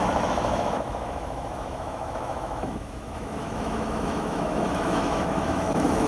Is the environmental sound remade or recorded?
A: remade